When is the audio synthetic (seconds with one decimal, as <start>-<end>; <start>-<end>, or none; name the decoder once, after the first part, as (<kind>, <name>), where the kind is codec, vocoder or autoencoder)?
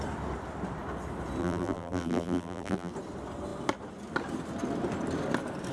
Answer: 1.4-2.9 (vocoder, BigVGAN v2)